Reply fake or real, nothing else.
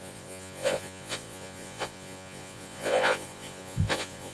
fake